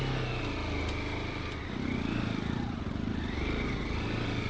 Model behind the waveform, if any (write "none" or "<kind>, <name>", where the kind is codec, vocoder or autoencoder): none